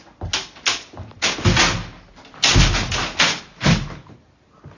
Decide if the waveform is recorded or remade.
recorded